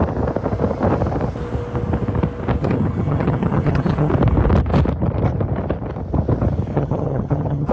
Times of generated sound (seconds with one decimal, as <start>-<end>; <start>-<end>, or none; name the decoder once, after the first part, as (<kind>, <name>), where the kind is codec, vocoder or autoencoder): 2.6-4.1 (vocoder, HiFi-GAN); 6.7-7.7